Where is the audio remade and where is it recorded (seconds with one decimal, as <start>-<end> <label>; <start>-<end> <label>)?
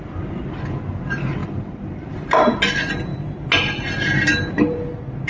0.0-5.3 recorded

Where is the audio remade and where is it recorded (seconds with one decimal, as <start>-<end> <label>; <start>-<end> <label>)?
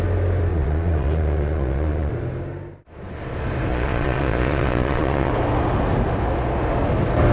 0.0-0.5 recorded; 0.5-2.1 remade; 2.1-3.7 recorded; 3.7-5.3 remade; 5.3-7.3 recorded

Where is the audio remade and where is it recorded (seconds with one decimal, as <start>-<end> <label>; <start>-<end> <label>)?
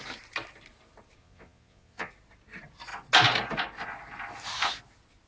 0.0-1.2 recorded; 1.2-2.1 remade; 2.1-5.3 recorded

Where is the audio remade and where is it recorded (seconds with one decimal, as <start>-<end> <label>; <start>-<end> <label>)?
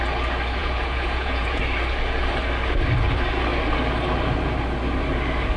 0.0-0.6 recorded; 0.6-1.6 remade; 1.6-5.6 recorded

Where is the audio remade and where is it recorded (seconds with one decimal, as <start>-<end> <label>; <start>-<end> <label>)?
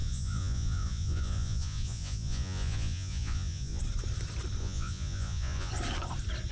0.0-3.8 remade; 3.8-4.6 recorded; 4.6-5.7 remade; 5.7-6.5 recorded